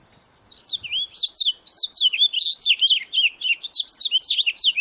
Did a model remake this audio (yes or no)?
no